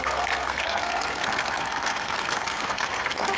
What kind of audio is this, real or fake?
fake